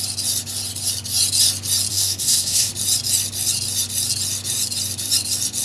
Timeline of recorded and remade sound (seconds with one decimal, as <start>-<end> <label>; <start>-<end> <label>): 0.0-1.9 recorded; 1.9-2.7 remade; 2.7-5.6 recorded